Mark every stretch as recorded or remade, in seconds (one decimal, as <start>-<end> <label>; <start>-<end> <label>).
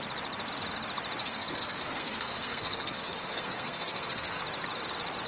0.0-1.2 recorded; 1.2-4.4 remade; 4.4-5.3 recorded